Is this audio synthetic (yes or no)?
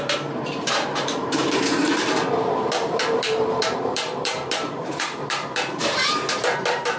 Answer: yes